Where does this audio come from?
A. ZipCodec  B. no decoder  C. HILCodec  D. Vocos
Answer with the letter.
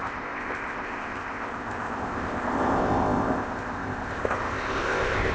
A